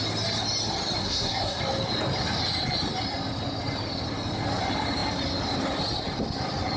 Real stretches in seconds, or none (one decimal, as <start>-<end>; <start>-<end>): 0.0-1.0; 1.6-6.8